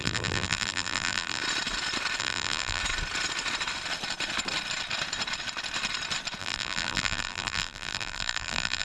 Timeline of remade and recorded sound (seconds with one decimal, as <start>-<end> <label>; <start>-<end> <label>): 0.0-1.4 remade; 1.4-2.2 recorded; 2.2-2.8 remade; 2.8-6.4 recorded; 6.4-8.8 remade

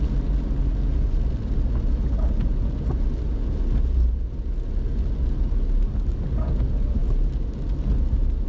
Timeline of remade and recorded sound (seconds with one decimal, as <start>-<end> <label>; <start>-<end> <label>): 0.0-8.5 recorded